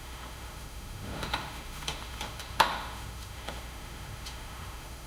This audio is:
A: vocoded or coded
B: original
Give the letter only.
A